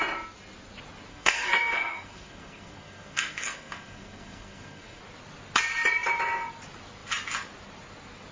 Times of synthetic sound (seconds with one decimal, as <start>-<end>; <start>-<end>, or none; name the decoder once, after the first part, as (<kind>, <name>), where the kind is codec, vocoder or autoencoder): 1.1-5.0 (codec, SNAC)